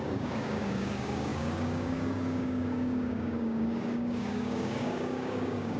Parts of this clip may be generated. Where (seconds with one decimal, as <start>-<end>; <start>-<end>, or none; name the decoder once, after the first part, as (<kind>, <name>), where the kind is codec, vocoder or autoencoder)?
0.0-5.8 (codec, DAC)